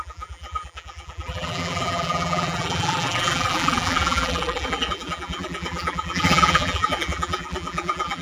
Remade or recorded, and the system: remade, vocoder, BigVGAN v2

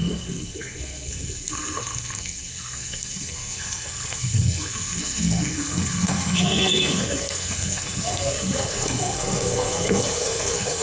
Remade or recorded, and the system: remade, codec, SNAC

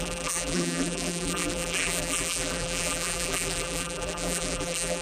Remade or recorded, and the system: remade, vocoder, BigVGAN v2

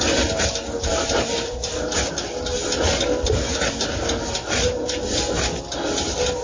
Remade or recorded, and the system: recorded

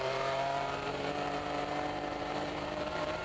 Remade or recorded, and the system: remade, vocoder, BigVGAN v2